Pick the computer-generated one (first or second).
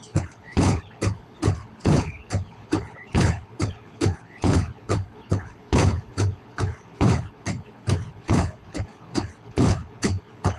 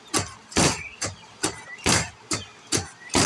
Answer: first